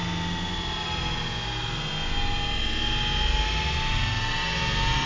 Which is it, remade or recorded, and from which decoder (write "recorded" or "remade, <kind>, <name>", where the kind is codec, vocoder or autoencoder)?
recorded